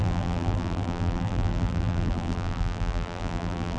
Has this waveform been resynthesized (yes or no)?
yes